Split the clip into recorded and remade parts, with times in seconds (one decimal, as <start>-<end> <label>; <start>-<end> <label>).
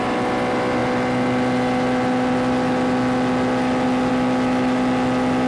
0.0-5.5 recorded